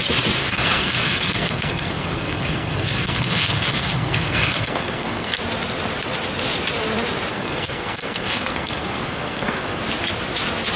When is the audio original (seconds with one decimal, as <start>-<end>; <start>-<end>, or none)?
0.0-0.4; 5.4-7.3; 9.8-10.8